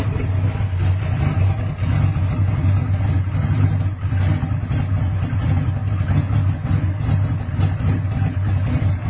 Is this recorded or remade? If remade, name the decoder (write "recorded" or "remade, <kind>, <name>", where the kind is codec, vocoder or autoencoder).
recorded